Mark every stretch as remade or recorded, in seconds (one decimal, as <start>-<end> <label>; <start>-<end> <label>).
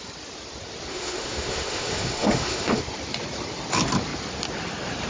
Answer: 0.0-0.9 recorded; 0.9-2.8 remade; 2.8-5.1 recorded